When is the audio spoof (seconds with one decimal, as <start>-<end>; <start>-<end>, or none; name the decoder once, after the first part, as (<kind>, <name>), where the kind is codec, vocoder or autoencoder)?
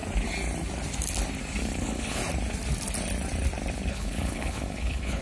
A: 1.8-2.2 (codec, HILCodec); 3.9-5.2